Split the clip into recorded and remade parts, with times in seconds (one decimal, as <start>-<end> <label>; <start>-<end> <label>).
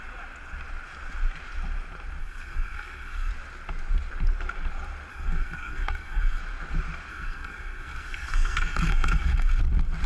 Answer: 0.0-2.2 recorded; 2.2-3.3 remade; 3.3-5.1 recorded; 5.1-6.4 remade; 6.4-7.1 recorded; 7.1-9.6 remade; 9.6-10.1 recorded